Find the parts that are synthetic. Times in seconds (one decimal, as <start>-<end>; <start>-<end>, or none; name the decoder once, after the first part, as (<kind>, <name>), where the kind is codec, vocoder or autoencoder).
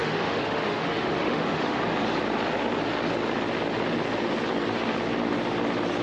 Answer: 0.0-1.8 (autoencoder, DAC-VAE)